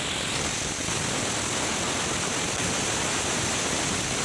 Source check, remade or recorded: recorded